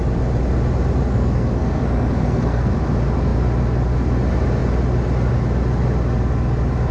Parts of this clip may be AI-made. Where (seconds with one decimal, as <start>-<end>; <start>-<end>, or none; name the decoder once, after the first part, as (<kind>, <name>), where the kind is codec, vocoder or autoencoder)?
1.1-2.7 (codec, SNAC)

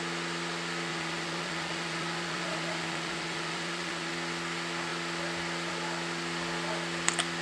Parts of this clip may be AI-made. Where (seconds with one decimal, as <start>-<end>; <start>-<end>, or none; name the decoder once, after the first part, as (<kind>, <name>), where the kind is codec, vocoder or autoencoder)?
0.9-4.1 (vocoder, Vocos)

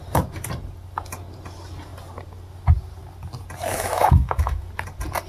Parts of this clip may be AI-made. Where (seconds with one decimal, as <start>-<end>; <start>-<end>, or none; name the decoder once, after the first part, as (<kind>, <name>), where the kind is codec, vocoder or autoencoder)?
3.7-4.7 (autoencoder, DAC-VAE)

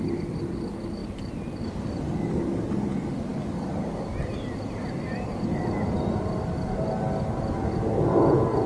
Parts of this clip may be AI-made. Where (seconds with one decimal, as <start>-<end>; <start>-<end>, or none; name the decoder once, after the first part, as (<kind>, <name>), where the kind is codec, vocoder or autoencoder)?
none

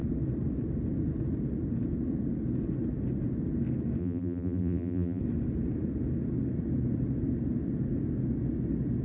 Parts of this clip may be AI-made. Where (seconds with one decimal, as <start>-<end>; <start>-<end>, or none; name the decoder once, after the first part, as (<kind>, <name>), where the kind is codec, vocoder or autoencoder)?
4.0-5.2 (vocoder, BigVGAN v2)